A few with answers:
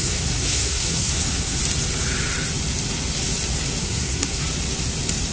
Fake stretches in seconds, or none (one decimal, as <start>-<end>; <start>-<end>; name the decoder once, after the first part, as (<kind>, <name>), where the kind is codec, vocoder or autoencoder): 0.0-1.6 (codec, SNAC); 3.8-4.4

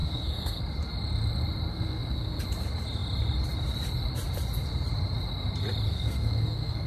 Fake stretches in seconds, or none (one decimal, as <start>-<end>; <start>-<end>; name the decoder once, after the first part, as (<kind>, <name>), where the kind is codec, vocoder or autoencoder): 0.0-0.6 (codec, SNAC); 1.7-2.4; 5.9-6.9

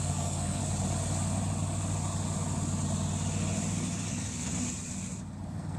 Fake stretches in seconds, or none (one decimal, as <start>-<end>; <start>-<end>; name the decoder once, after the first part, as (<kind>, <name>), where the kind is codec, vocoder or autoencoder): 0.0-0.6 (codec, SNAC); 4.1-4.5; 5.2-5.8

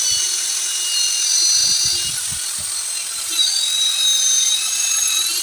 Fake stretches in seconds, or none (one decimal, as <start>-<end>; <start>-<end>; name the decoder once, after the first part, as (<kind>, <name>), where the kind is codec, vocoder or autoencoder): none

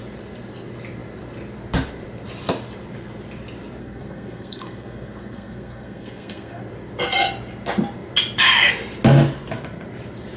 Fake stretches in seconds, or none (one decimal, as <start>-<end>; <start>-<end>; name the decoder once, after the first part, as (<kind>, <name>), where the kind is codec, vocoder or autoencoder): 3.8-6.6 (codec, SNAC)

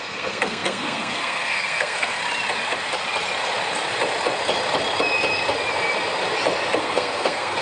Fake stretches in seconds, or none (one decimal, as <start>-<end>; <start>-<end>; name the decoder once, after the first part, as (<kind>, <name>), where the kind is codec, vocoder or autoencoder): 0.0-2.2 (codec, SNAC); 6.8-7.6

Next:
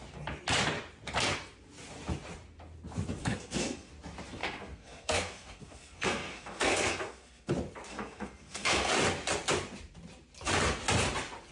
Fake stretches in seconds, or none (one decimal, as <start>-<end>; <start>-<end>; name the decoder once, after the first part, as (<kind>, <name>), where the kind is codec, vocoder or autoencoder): 3.2-3.9 (codec, SNAC); 4.4-7.5; 7.9-8.9

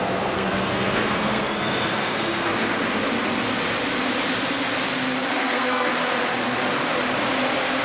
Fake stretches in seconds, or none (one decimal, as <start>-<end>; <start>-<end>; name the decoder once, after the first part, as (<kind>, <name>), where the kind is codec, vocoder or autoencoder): 0.0-2.5 (codec, SNAC); 5.3-5.9